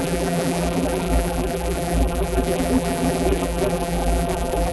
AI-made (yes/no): yes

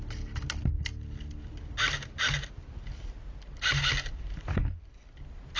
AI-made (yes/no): no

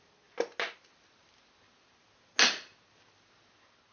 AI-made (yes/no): no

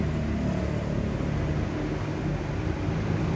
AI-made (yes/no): no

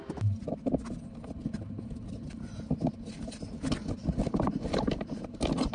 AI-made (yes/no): no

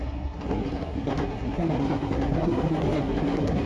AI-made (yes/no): yes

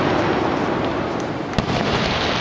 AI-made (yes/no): no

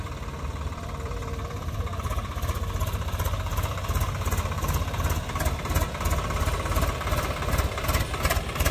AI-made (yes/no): yes